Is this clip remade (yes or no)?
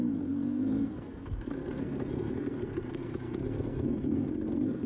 yes